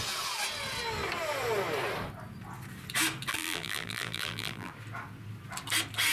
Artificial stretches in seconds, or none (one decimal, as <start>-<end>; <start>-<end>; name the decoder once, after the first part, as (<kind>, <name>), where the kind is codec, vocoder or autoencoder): 3.3-4.7 (vocoder, BigVGAN v2)